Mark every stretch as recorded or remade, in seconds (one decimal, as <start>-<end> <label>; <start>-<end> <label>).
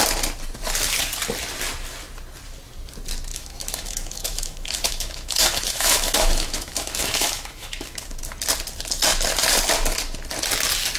0.0-3.3 recorded; 3.3-8.2 remade; 8.2-11.0 recorded